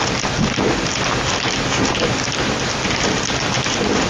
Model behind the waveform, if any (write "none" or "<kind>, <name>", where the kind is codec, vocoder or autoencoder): none